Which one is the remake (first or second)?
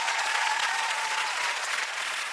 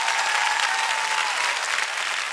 first